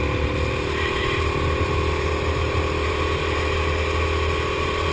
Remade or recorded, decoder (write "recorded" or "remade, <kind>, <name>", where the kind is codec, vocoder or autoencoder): recorded